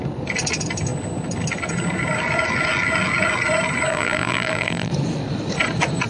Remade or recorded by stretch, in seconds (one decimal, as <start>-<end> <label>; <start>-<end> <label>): 0.0-3.9 recorded; 3.9-4.9 remade; 4.9-6.1 recorded